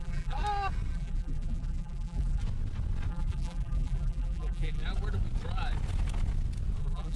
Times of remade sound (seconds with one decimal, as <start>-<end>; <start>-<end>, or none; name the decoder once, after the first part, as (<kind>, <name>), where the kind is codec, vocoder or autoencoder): 0.0-0.4 (vocoder, BigVGAN v2); 0.9-2.4; 3.1-4.8; 6.8-7.2